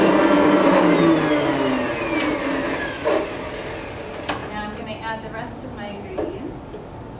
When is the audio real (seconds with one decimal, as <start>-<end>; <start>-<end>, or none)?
0.0-7.2